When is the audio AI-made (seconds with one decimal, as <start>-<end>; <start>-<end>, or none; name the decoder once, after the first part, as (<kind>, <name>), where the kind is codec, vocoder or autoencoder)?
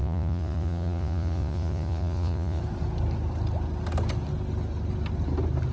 0.0-2.6 (vocoder, Vocos)